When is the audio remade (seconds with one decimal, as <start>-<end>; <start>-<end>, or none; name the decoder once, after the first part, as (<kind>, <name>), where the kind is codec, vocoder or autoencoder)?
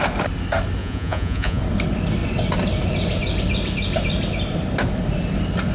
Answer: 0.8-1.6 (vocoder, Vocos)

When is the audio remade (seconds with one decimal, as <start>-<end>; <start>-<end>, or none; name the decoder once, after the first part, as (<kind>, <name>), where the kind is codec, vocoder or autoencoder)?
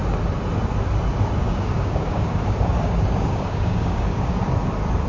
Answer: 1.4-4.5 (codec, DAC)